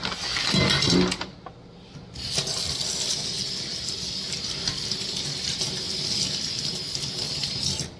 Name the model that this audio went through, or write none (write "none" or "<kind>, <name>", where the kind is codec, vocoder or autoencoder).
none